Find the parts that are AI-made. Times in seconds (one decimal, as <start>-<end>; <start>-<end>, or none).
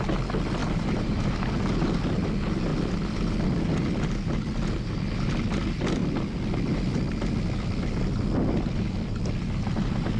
0.6-1.5